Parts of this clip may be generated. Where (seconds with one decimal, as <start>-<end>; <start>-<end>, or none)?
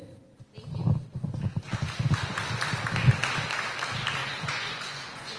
4.2-5.4